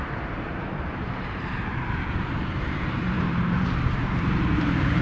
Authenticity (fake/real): fake